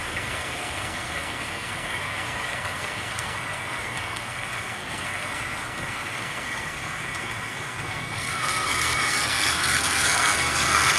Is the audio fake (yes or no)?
yes